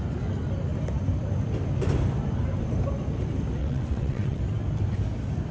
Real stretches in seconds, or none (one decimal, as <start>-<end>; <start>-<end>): 0.0-3.6; 4.4-5.5